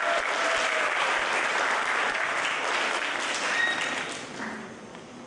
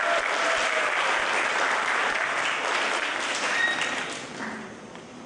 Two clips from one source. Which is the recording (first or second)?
first